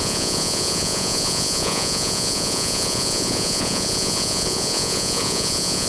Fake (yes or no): yes